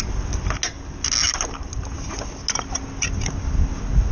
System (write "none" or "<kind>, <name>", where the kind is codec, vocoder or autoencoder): none